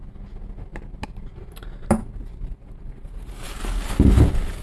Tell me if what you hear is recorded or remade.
recorded